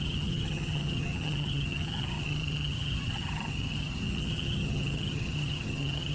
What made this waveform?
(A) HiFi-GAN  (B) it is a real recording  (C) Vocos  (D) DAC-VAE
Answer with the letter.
A